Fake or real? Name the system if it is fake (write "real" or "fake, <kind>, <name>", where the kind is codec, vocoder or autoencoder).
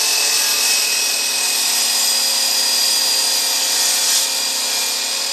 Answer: real